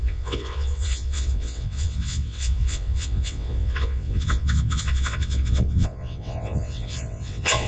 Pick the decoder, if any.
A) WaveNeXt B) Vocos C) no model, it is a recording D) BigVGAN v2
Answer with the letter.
A